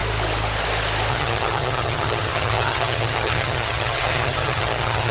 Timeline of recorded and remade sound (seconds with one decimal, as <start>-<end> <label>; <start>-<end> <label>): 0.0-1.1 recorded; 1.1-5.1 remade